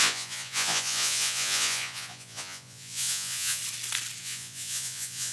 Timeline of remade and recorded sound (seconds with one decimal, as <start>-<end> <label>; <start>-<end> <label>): 0.0-3.6 remade; 3.6-4.2 recorded; 4.2-5.3 remade